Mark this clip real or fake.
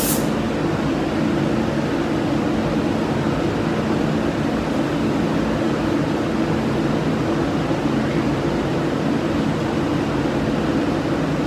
real